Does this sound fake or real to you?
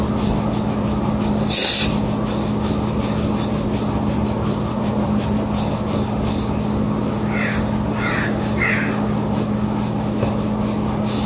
real